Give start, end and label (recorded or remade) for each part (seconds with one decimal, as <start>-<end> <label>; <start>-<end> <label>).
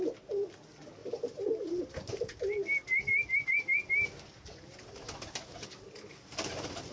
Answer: 0.0-1.0 recorded; 1.0-1.8 remade; 1.8-6.9 recorded